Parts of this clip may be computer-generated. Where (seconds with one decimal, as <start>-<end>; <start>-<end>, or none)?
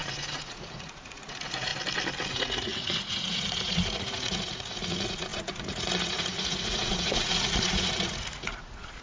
0.0-1.7; 2.3-9.0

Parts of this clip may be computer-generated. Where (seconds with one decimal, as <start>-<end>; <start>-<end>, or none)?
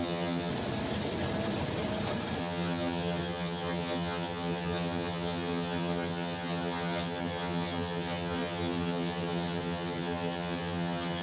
0.0-0.5; 2.4-11.2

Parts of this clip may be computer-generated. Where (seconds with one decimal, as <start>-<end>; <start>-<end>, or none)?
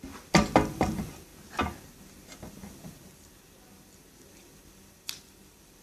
0.0-1.3; 4.3-5.8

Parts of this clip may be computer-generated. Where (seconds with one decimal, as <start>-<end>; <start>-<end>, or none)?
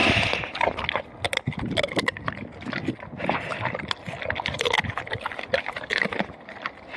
none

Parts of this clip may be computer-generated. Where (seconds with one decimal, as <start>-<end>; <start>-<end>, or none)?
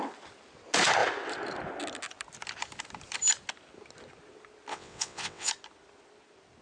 4.7-5.5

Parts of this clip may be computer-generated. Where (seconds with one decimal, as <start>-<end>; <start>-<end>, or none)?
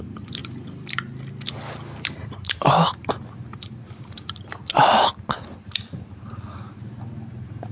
none